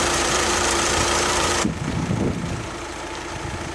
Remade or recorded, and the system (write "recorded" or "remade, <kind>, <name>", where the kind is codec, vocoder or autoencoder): remade, vocoder, BigVGAN v2